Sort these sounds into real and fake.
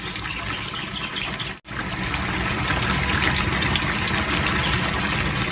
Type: real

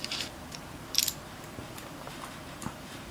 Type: fake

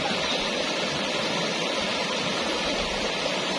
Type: real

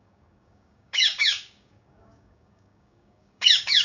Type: fake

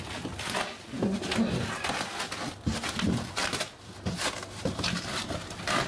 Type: real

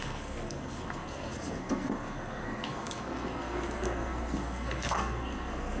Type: fake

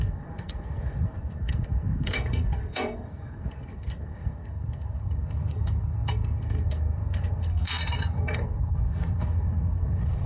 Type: fake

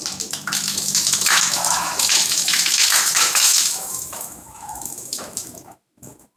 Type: fake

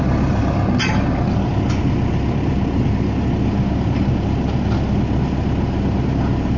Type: real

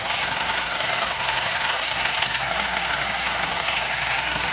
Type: fake